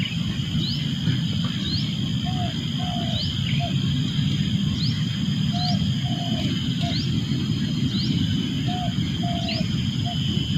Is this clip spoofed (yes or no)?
no